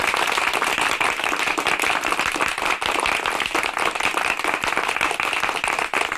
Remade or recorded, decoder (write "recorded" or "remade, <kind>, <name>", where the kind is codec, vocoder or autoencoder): recorded